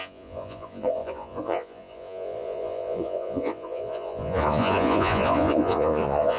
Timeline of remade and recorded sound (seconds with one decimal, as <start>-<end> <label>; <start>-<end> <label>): 0.0-6.4 remade